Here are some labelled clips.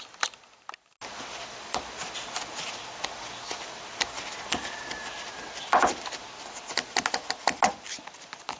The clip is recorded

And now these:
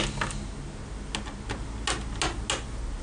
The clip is recorded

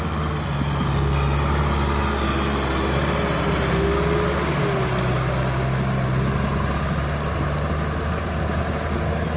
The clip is recorded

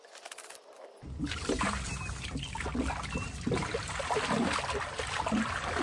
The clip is recorded